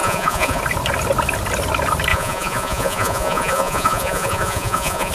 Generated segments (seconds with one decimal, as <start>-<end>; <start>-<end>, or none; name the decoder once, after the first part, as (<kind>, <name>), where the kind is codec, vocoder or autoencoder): 0.0-0.6 (vocoder, Vocos); 2.1-5.1